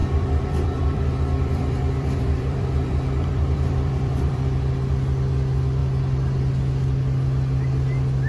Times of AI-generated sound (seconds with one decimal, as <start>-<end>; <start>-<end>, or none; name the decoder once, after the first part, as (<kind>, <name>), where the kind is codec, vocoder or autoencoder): 0.0-4.7 (vocoder, BigVGAN v2)